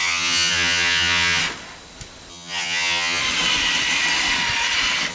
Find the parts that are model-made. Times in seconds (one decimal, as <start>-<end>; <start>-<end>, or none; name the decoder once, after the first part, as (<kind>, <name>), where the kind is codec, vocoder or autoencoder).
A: 0.0-1.4 (vocoder, HiFi-GAN); 2.3-3.2